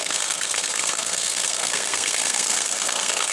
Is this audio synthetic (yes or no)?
yes